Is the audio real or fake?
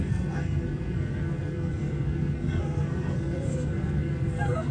fake